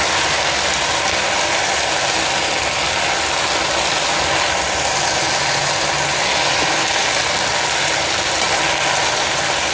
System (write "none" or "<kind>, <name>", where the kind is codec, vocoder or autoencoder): none